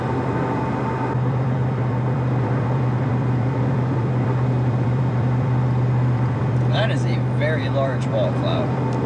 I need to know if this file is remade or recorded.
remade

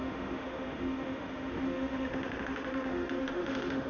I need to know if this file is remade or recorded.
remade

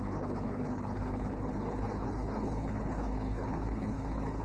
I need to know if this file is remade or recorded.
remade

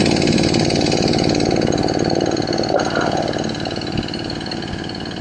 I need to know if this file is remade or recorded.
recorded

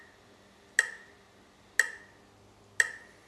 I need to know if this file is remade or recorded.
recorded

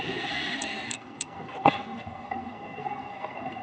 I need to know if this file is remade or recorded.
remade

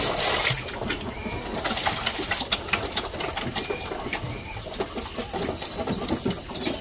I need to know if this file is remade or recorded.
recorded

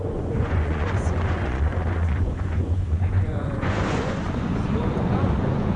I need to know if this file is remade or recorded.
remade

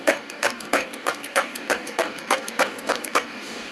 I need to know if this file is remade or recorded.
remade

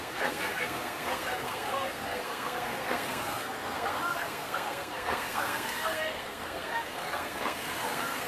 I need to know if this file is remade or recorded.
remade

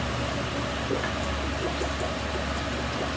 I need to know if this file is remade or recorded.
recorded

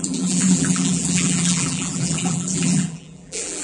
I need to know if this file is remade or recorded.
remade